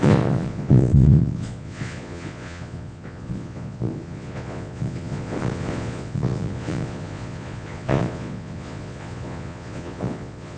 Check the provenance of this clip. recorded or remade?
remade